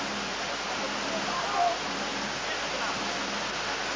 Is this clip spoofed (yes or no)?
no